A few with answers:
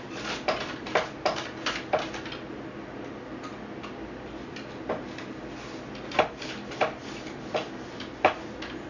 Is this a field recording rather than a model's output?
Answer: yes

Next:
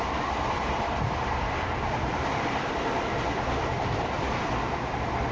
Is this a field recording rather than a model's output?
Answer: yes